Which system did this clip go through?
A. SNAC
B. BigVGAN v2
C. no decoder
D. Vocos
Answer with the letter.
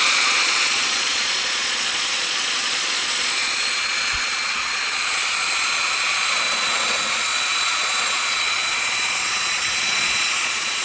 D